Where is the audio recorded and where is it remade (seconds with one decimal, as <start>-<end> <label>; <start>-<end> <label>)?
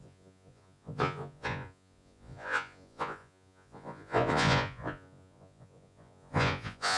0.0-7.0 remade